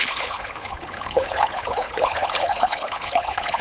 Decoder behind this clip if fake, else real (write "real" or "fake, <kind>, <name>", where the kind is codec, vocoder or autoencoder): fake, codec, HILCodec